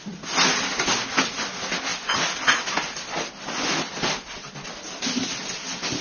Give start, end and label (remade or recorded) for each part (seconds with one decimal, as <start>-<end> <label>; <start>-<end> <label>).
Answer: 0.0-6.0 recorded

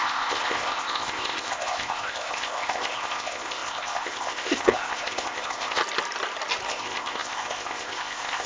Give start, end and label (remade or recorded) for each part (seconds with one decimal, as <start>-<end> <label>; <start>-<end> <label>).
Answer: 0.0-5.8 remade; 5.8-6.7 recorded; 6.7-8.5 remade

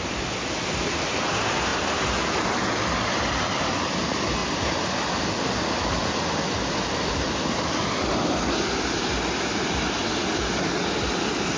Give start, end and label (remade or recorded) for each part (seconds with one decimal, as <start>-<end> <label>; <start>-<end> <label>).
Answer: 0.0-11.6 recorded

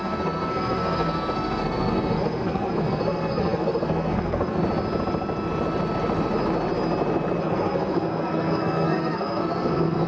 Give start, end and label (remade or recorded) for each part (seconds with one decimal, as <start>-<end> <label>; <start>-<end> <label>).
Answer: 0.0-4.6 remade; 4.6-7.4 recorded; 7.4-10.1 remade